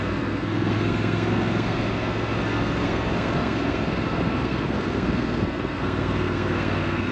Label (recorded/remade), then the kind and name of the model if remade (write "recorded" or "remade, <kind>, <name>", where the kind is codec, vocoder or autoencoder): remade, codec, SNAC